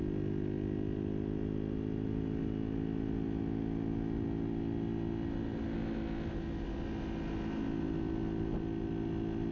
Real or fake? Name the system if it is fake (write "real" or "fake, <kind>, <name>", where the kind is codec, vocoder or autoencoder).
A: real